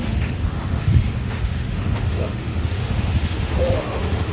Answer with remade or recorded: remade